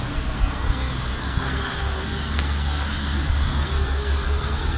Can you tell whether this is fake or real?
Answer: fake